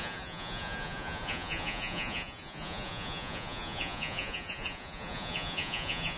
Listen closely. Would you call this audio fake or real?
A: fake